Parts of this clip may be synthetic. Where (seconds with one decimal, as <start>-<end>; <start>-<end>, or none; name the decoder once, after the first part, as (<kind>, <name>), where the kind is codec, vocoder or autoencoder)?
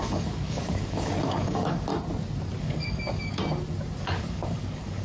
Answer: 0.0-1.9 (codec, DAC); 2.6-3.4; 4.0-5.0